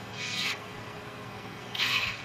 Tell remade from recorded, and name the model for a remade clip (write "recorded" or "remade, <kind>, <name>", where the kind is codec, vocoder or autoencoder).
remade, codec, SNAC